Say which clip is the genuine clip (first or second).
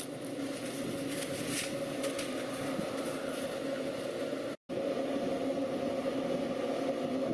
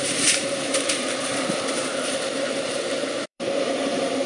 first